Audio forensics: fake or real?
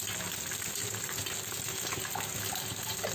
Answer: real